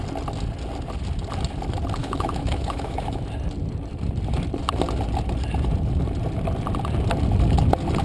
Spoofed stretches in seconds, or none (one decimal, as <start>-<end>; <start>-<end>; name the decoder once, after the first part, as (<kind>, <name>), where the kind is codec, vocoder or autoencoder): 2.0-3.2 (autoencoder, DAC-VAE)

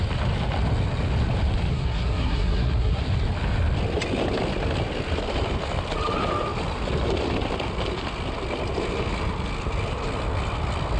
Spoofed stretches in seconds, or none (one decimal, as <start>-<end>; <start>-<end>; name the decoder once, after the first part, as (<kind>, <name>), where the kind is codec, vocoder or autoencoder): 1.7-3.0 (codec, SNAC)